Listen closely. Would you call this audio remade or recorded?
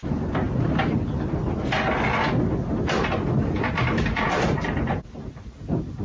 recorded